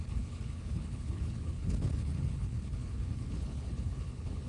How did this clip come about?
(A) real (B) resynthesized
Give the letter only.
B